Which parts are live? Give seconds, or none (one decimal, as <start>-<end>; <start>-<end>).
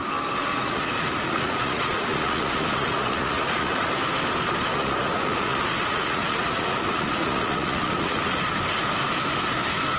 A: 0.0-0.4; 3.9-4.7; 8.4-10.0